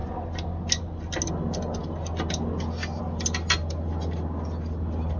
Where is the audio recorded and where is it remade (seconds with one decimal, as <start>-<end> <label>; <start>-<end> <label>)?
0.0-5.2 recorded